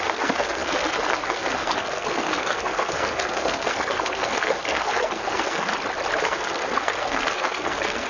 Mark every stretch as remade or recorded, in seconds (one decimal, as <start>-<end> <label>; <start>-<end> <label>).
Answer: 0.0-5.7 remade; 5.7-6.2 recorded; 6.2-8.1 remade